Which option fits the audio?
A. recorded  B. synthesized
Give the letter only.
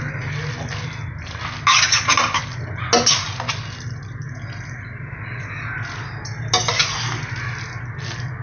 A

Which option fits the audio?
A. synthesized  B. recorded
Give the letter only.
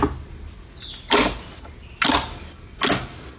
B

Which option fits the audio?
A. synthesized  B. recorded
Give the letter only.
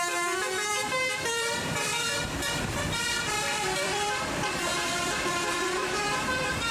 A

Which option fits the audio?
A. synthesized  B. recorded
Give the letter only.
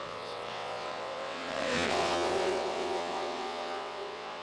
A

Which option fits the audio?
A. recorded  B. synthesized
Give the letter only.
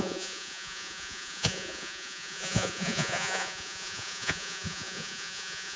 B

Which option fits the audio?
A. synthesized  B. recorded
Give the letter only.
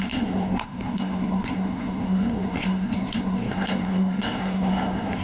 A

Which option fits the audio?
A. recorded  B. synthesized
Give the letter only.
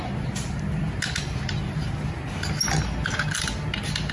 A